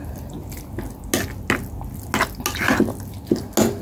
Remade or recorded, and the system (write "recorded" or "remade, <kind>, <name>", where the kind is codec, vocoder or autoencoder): recorded